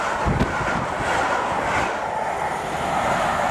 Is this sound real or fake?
real